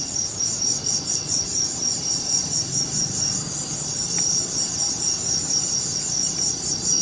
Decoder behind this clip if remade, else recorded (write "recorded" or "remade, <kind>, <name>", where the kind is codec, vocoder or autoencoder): remade, vocoder, BigVGAN v2